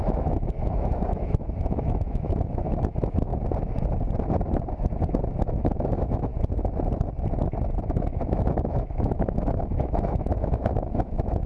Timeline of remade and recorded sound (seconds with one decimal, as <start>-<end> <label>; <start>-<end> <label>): 0.0-3.3 remade; 3.3-5.4 recorded; 5.4-6.3 remade; 6.3-7.8 recorded; 7.8-11.5 remade

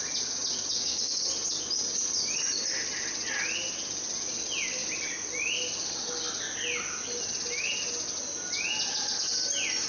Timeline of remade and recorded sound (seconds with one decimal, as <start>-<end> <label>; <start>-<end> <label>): 0.0-0.7 recorded; 0.7-1.2 remade; 1.2-9.9 recorded

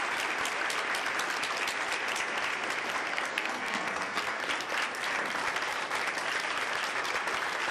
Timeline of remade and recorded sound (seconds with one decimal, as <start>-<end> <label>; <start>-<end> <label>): 0.0-3.1 recorded; 3.1-4.4 remade; 4.4-7.7 recorded